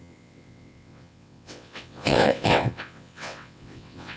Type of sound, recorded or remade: remade